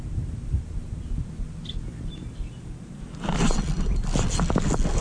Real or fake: real